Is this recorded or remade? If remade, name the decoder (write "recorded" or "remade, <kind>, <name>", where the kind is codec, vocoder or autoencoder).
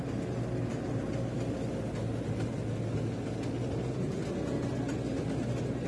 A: recorded